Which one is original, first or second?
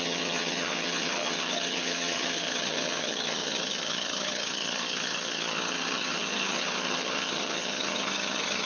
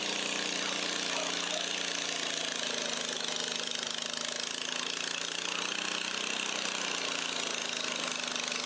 second